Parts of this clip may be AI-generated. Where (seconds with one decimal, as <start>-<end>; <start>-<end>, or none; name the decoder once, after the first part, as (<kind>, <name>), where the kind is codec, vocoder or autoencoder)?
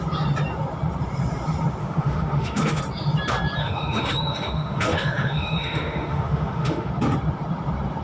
1.8-2.8 (autoencoder, DAC-VAE); 3.6-6.9